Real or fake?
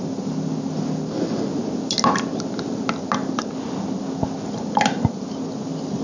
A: real